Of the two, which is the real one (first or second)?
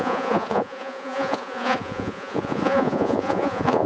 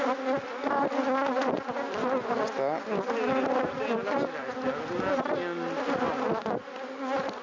second